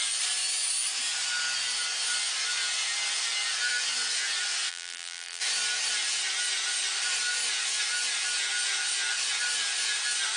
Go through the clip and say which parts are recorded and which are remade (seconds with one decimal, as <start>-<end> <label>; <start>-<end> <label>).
0.0-4.7 recorded; 4.7-5.4 remade; 5.4-10.4 recorded